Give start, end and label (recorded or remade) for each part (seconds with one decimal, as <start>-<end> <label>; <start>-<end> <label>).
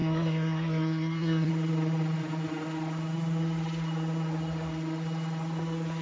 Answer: 0.0-1.5 remade; 1.5-6.0 recorded